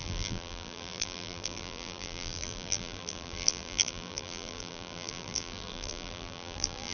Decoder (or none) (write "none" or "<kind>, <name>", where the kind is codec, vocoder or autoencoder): vocoder, BigVGAN v2